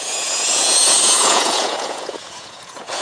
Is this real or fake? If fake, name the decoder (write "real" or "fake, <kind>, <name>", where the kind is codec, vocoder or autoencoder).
fake, vocoder, Vocos